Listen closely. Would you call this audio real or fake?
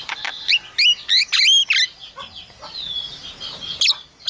real